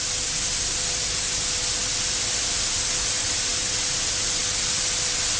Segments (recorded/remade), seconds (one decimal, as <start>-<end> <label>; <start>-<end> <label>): 0.0-5.4 recorded